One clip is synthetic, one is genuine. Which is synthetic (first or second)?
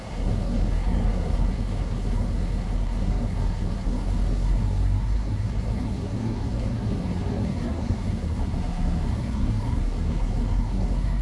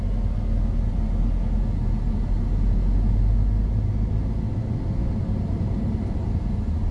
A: first